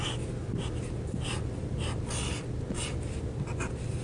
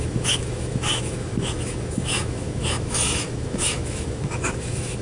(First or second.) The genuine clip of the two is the first